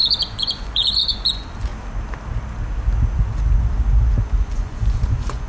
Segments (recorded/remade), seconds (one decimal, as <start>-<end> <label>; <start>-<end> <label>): 0.0-1.7 remade; 1.7-4.4 recorded; 4.4-5.5 remade